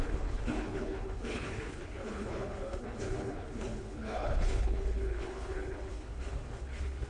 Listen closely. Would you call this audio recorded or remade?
remade